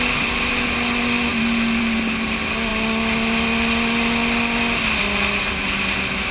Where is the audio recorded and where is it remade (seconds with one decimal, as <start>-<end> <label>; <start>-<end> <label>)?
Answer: 0.0-6.3 recorded